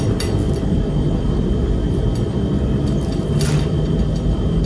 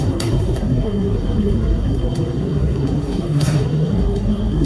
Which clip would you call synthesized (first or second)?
second